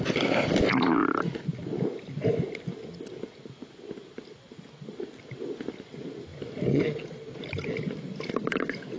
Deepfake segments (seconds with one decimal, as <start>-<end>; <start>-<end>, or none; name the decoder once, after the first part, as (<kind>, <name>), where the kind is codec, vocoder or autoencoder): 6.7-7.4 (vocoder, Vocos)